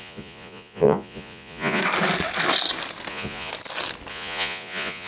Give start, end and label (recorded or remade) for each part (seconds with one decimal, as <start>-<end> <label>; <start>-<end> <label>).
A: 0.0-1.8 remade; 1.8-3.1 recorded; 3.1-3.5 remade; 3.5-4.1 recorded; 4.1-5.1 remade